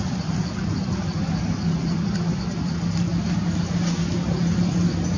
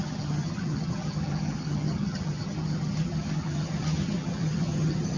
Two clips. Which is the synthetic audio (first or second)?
second